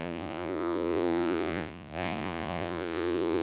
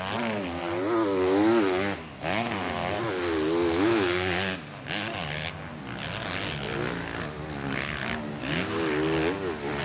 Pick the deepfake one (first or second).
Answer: first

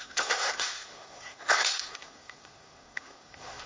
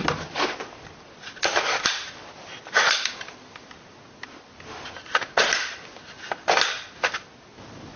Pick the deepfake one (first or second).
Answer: first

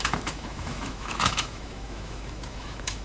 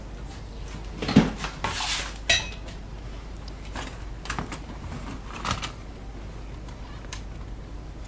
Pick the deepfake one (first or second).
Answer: first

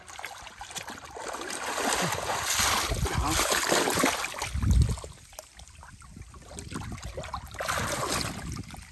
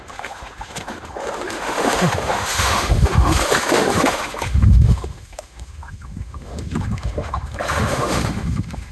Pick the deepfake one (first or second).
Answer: second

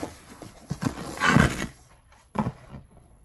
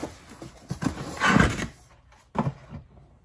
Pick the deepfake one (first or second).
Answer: first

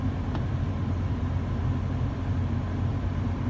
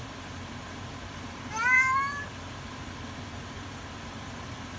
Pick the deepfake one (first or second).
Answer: second